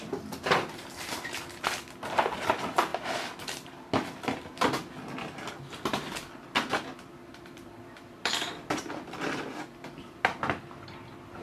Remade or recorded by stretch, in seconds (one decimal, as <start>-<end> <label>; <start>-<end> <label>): 0.0-11.4 recorded